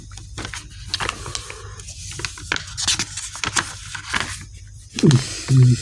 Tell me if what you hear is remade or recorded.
recorded